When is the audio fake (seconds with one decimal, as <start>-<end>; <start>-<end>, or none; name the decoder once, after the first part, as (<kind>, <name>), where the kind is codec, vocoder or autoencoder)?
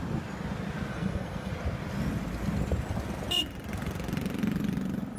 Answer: 0.9-1.5 (codec, SNAC)